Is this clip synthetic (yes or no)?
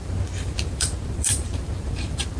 yes